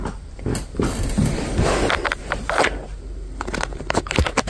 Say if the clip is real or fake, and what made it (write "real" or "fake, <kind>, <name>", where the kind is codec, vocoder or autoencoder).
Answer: real